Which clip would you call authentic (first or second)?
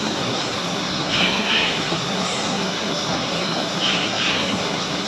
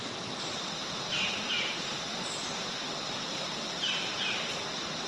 second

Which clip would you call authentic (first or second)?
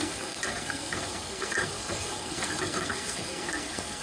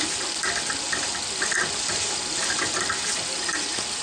second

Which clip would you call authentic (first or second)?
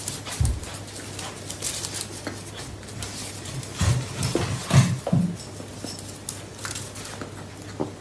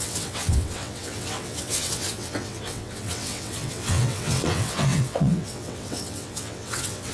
first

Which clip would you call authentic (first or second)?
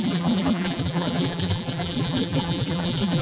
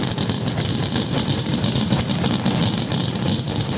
second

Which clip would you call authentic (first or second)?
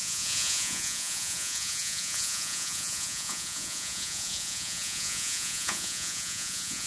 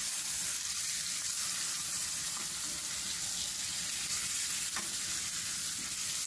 second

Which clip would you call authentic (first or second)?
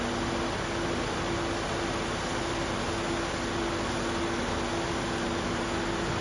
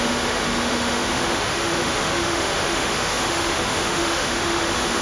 first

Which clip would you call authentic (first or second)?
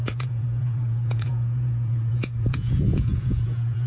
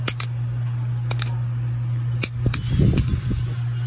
second